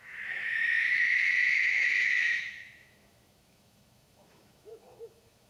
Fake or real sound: fake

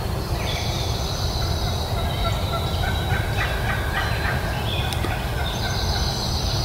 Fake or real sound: real